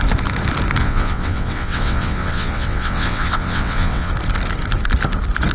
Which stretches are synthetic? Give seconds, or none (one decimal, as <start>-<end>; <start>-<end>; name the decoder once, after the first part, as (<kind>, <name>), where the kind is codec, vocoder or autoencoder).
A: 0.8-4.1 (vocoder, WaveNeXt)